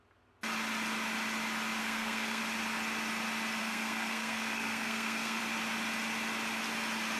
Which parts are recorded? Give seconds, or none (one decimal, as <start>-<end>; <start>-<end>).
0.0-1.8; 2.4-3.6; 5.4-7.2